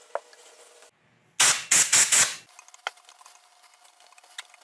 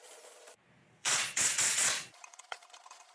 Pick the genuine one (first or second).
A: first